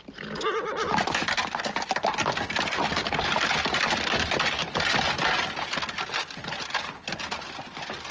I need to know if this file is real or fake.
real